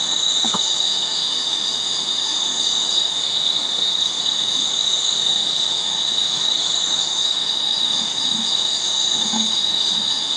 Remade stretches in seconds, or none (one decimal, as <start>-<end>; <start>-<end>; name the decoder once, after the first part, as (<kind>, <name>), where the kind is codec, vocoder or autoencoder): 0.0-10.4 (autoencoder, DAC-VAE)